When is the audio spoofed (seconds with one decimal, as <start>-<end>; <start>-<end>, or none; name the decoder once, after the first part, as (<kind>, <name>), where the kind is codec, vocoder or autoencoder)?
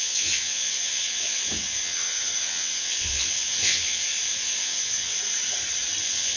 0.0-5.2 (vocoder, WaveNeXt); 6.0-6.4